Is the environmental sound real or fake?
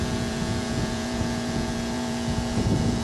fake